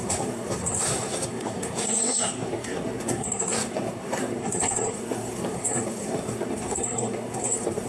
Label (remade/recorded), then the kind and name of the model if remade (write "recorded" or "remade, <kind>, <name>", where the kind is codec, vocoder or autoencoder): remade, codec, SNAC